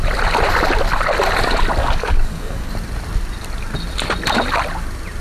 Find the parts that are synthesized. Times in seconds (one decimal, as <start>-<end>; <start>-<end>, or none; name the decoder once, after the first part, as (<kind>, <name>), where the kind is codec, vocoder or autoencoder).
1.8-2.7 (codec, DAC)